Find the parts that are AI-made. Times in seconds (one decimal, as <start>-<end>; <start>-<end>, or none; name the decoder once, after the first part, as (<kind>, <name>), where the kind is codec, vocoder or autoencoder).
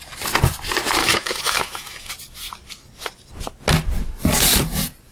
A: 1.0-2.1 (autoencoder, DAC-VAE)